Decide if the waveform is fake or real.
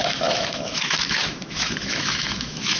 fake